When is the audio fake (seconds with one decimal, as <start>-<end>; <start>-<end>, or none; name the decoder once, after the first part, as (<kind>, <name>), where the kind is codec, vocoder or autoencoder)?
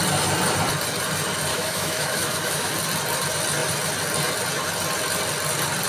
1.5-2.7 (autoencoder, DAC-VAE)